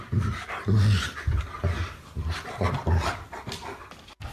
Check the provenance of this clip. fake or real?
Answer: real